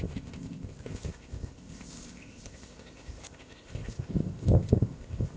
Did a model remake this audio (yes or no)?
yes